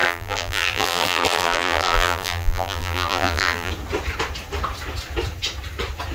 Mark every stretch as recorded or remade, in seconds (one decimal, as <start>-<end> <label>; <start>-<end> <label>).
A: 0.0-3.7 remade; 3.7-6.1 recorded